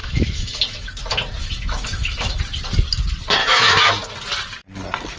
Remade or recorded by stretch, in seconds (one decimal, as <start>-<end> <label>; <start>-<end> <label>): 0.0-0.9 remade; 0.9-1.4 recorded; 1.4-2.4 remade; 2.4-3.4 recorded; 3.4-3.9 remade; 3.9-5.2 recorded